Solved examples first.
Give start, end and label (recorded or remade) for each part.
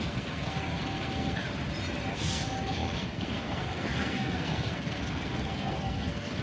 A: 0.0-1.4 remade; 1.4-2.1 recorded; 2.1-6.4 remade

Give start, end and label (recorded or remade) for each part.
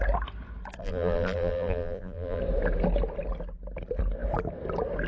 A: 0.0-0.8 recorded; 0.8-2.4 remade; 2.4-5.1 recorded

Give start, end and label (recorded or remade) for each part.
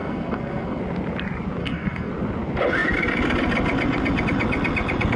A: 0.0-0.8 remade; 0.8-1.6 recorded; 1.6-2.1 remade; 2.1-5.2 recorded